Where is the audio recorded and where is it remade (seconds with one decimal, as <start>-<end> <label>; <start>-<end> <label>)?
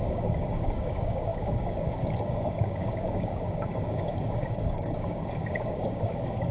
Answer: 0.0-6.5 remade